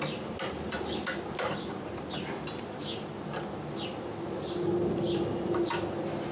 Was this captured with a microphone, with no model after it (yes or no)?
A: yes